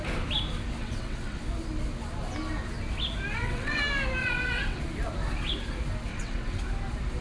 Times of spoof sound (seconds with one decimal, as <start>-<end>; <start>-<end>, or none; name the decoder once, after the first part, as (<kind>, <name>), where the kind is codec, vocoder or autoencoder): 0.8-1.4 (vocoder, WaveNeXt); 3.3-3.8; 4.2-4.8; 6.1-6.6